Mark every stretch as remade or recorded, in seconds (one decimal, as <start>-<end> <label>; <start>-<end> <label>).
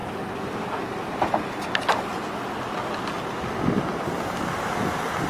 0.0-5.3 recorded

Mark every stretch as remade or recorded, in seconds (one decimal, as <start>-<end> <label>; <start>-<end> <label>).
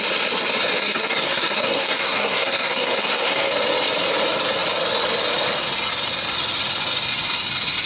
0.0-0.8 recorded; 0.8-3.5 remade; 3.5-7.9 recorded